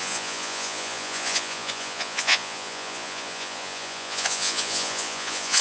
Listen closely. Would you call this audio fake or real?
fake